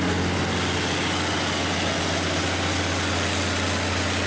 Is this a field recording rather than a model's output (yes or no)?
yes